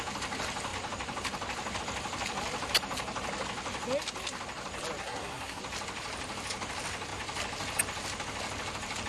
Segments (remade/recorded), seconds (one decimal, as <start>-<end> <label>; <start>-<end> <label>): 0.0-5.0 recorded; 5.0-5.6 remade; 5.6-9.1 recorded